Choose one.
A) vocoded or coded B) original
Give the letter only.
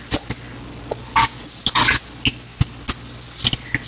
B